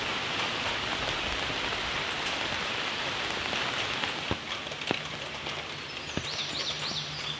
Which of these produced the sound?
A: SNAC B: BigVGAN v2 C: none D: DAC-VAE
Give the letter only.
C